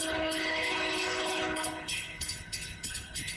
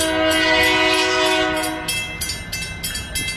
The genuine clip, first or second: second